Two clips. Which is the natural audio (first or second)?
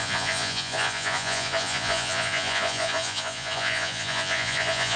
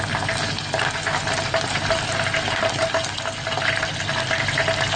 second